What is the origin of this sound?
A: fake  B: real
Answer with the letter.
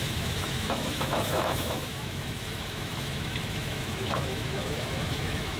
A